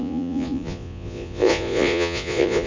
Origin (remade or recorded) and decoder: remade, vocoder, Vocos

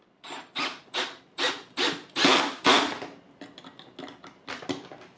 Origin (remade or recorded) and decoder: recorded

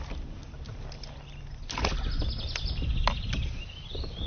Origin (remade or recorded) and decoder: recorded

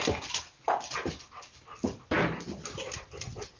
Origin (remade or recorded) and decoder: recorded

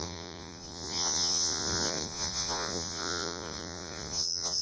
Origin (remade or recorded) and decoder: remade, vocoder, Vocos